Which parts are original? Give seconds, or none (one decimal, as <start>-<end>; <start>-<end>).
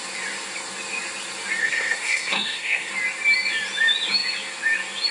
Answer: 0.0-1.6; 2.9-5.1